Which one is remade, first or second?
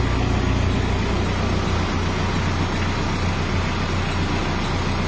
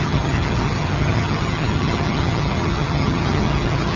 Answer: second